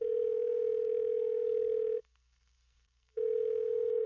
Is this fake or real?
fake